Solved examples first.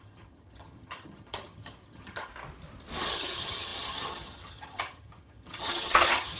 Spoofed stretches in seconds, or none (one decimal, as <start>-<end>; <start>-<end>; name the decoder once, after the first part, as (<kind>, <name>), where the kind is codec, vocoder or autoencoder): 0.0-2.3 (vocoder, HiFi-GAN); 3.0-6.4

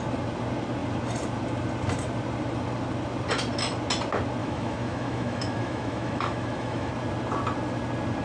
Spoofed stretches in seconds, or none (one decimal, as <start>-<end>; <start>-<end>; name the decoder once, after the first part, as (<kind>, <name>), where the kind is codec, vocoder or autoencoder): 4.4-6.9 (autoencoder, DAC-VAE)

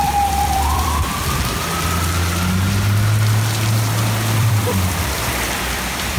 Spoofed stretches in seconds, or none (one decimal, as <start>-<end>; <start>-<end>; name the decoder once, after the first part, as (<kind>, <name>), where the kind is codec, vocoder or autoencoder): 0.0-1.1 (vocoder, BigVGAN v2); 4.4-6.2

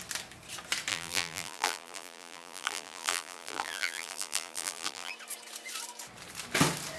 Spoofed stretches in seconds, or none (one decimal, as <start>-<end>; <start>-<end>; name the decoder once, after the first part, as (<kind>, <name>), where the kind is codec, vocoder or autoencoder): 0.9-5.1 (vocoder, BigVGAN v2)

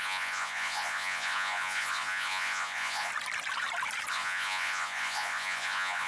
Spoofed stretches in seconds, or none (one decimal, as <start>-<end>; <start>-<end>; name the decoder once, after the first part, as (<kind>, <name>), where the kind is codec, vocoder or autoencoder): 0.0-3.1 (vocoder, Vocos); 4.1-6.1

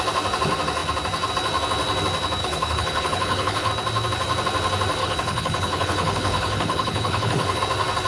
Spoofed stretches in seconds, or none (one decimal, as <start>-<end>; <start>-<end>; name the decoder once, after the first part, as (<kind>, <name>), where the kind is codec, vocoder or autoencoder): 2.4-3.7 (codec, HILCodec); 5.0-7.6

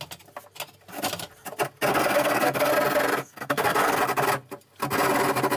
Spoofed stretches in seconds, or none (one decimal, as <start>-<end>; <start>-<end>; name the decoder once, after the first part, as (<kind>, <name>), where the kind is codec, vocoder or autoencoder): 1.9-2.7 (codec, SNAC); 3.2-4.0